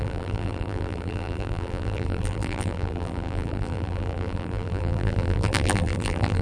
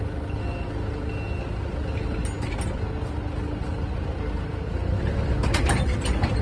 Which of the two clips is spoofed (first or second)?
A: first